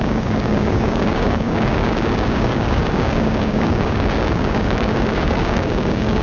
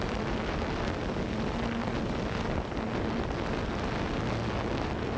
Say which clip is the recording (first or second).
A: second